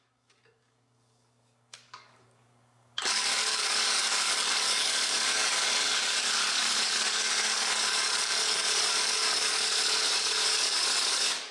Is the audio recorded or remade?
remade